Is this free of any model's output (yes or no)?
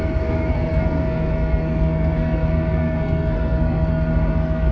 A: no